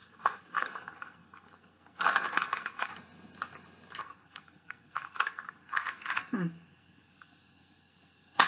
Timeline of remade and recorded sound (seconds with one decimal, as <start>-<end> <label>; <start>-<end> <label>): 0.0-2.9 remade; 2.9-4.0 recorded; 4.0-8.5 remade